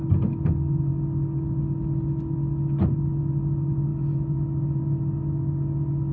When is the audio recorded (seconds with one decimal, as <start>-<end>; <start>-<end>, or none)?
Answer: 0.0-6.1